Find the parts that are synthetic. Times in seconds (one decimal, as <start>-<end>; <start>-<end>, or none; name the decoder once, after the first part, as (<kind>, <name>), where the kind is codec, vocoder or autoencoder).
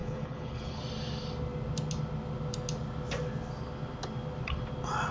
0.0-0.8 (codec, HILCodec)